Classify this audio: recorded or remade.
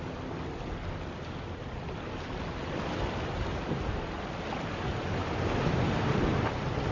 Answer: recorded